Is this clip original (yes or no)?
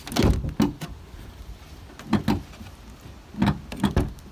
yes